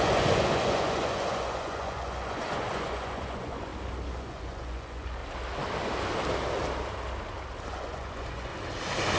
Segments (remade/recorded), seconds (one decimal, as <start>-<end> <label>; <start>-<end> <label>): 0.0-3.7 remade; 3.7-4.2 recorded; 4.2-5.2 remade; 5.2-7.7 recorded; 7.7-8.5 remade; 8.5-9.2 recorded